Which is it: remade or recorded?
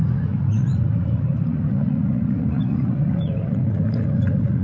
remade